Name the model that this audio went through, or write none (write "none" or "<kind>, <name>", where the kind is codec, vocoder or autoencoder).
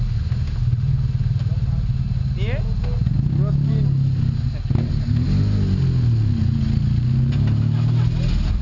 none